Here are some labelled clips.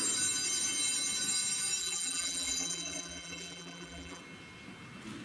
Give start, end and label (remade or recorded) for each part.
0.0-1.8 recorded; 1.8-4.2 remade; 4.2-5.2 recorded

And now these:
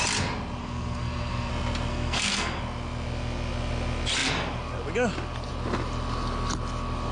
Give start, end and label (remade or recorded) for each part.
0.0-0.6 recorded; 0.6-1.5 remade; 1.5-1.9 recorded; 1.9-2.6 remade; 2.6-7.1 recorded

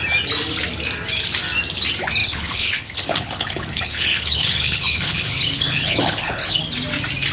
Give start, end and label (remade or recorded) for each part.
0.0-2.2 recorded; 2.2-6.6 remade; 6.6-7.3 recorded

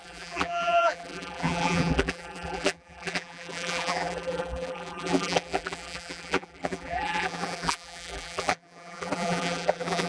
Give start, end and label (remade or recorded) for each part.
0.0-10.1 remade

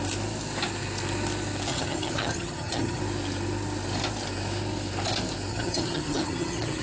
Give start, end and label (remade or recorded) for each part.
0.0-1.7 recorded; 1.7-3.0 remade; 3.0-5.5 recorded; 5.5-6.8 remade

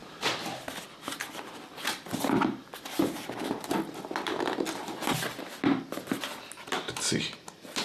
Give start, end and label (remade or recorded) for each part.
0.0-3.0 recorded; 3.0-3.7 remade; 3.7-7.8 recorded

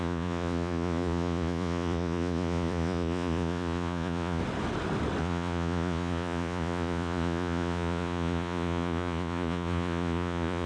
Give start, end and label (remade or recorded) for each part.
0.0-4.4 remade; 4.4-5.2 recorded; 5.2-10.7 remade